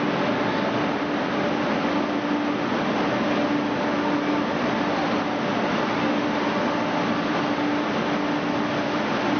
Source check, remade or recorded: recorded